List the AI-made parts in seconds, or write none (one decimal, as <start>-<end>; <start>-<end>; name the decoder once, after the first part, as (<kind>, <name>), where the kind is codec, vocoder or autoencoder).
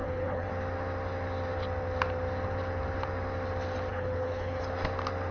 0.0-0.5 (codec, HILCodec); 3.9-4.6